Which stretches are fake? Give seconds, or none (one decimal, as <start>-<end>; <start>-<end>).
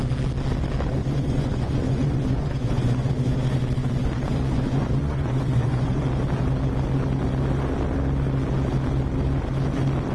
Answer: 1.0-3.1; 4.0-6.0